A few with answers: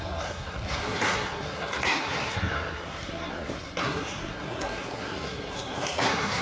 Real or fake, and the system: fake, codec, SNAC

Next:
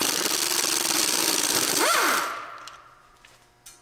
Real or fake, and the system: fake, vocoder, BigVGAN v2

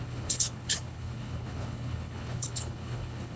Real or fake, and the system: fake, codec, HILCodec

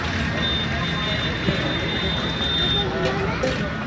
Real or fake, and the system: real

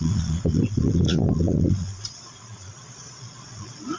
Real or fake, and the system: fake, vocoder, Vocos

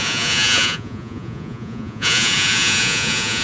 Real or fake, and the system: fake, vocoder, Vocos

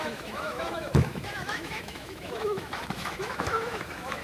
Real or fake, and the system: fake, autoencoder, DAC-VAE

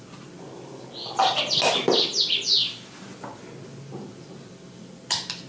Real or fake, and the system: real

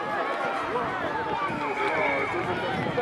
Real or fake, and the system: real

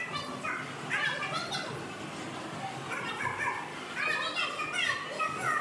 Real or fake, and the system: real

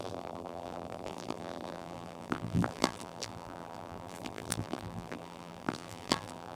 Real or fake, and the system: fake, vocoder, BigVGAN v2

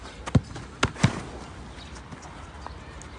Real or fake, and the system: real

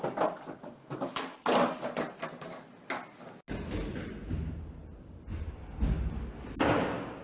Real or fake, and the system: real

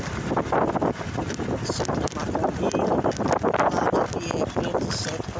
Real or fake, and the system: real